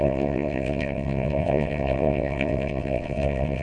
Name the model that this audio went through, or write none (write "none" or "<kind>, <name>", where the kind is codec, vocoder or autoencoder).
vocoder, WaveNeXt